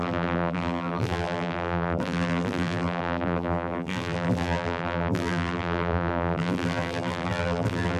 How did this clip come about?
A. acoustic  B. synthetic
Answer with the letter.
B